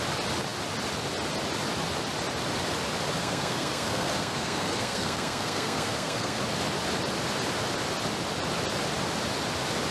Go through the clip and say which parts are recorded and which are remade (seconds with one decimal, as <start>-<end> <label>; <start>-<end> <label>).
0.0-3.2 recorded; 3.2-6.4 remade; 6.4-9.9 recorded